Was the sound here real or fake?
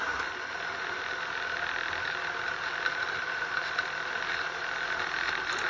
real